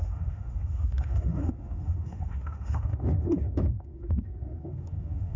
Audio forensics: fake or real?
fake